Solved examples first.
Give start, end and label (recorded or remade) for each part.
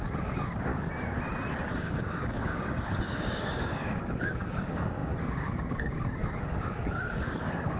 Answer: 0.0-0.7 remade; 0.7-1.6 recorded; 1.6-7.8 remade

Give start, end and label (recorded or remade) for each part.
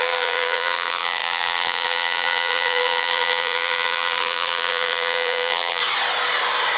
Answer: 0.0-5.8 remade; 5.8-6.8 recorded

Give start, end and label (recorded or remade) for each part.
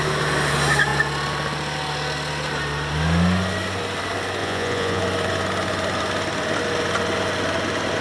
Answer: 0.0-4.4 recorded; 4.4-5.0 remade; 5.0-8.0 recorded